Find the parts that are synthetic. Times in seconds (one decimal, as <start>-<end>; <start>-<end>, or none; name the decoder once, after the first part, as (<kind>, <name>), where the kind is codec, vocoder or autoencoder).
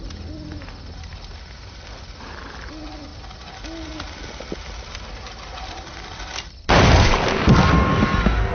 none